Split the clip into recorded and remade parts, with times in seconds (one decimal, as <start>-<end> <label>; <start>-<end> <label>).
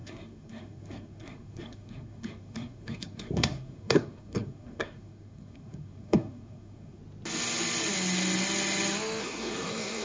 0.0-7.0 remade; 7.0-9.2 recorded; 9.2-10.0 remade